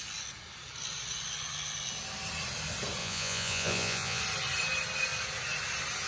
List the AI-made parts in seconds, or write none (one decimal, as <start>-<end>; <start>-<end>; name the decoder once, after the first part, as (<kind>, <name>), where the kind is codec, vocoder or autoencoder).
3.0-4.2 (vocoder, Vocos)